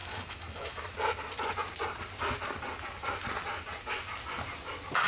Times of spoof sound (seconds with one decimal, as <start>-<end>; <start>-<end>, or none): 0.0-0.9